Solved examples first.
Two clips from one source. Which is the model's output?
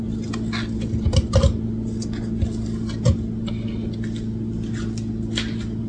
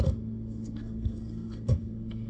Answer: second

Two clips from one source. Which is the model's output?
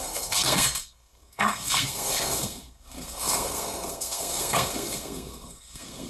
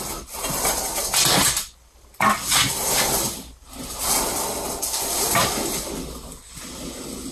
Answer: first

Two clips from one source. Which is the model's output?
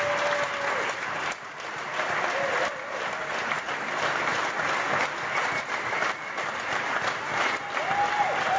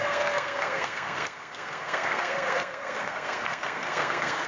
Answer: second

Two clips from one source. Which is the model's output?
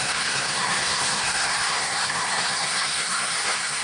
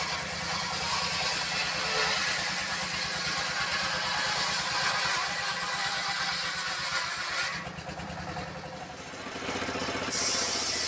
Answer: first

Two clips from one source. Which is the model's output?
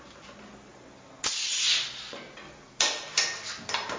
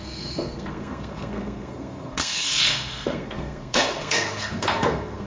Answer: second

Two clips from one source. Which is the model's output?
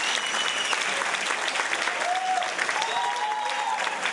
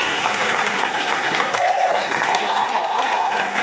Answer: second